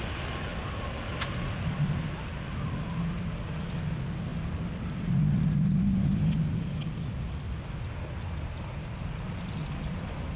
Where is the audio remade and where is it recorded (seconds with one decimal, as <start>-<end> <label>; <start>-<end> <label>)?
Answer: 0.0-10.4 recorded